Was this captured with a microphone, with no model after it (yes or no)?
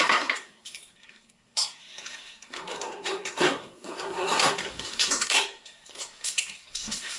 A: no